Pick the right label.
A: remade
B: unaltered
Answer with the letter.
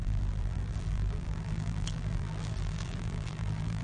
A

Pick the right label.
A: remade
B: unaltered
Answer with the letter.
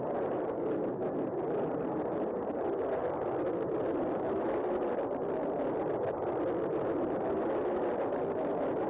B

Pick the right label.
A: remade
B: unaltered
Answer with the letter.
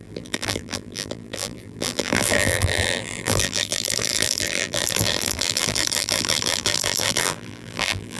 A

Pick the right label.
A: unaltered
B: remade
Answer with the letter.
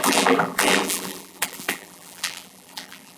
B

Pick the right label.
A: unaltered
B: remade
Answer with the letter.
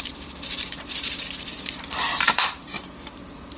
B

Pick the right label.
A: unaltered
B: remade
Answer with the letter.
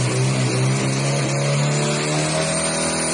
A